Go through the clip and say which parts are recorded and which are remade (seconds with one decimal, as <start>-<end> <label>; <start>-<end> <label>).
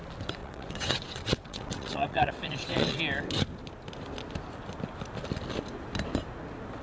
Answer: 0.0-0.4 recorded; 0.4-3.0 remade; 3.0-6.8 recorded